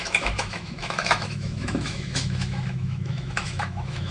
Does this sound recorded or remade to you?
remade